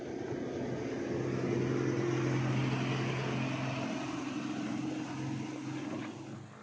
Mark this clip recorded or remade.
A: recorded